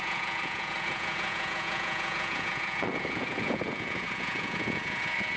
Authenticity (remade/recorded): remade